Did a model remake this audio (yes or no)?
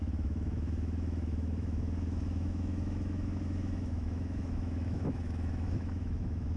yes